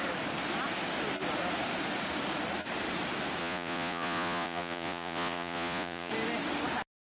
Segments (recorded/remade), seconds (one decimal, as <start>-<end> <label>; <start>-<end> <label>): 0.0-3.4 recorded; 3.4-6.1 remade; 6.1-7.1 recorded